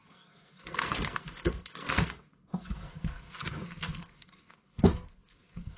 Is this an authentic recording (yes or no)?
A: no